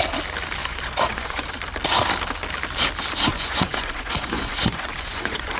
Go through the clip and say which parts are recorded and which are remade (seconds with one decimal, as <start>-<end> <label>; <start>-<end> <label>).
0.0-0.6 recorded; 0.6-1.5 remade; 1.5-3.3 recorded; 3.3-5.6 remade